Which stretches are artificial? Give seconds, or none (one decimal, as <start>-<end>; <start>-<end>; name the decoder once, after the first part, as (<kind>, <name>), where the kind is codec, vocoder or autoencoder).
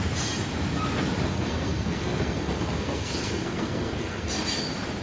1.3-4.3 (codec, SNAC)